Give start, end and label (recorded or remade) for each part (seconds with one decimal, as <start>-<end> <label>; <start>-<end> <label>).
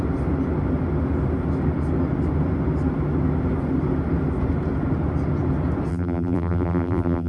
0.0-5.9 recorded; 5.9-7.3 remade